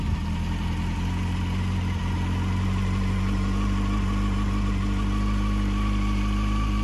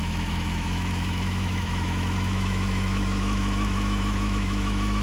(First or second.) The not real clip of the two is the second